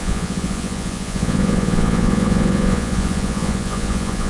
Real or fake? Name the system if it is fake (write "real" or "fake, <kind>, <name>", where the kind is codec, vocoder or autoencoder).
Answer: fake, vocoder, Vocos